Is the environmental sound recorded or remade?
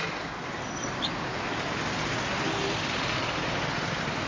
recorded